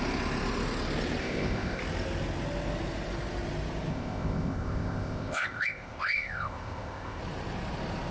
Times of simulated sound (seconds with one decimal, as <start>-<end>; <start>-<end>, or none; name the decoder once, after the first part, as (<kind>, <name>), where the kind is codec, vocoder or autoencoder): 1.2-1.8 (codec, ZipCodec); 3.9-7.2